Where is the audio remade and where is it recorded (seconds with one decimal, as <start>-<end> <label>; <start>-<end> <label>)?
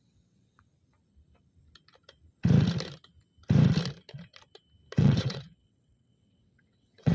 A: 0.0-0.7 remade; 0.7-5.0 recorded; 5.0-7.1 remade